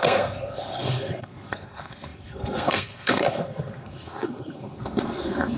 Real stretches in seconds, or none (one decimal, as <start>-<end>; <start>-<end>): none